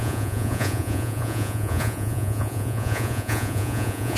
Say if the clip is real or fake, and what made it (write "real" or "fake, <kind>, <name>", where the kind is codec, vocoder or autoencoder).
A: fake, vocoder, Vocos